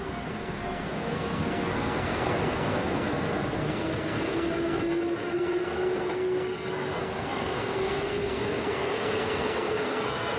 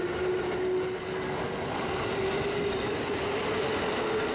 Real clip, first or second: second